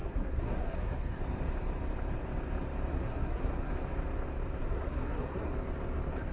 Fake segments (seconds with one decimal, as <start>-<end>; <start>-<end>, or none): 0.0-1.2; 2.9-3.7; 4.6-5.5